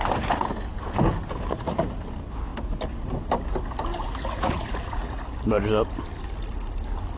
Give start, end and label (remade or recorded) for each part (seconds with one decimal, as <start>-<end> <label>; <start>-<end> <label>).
0.0-1.5 recorded; 1.5-2.0 remade; 2.0-3.9 recorded; 3.9-5.2 remade; 5.2-7.2 recorded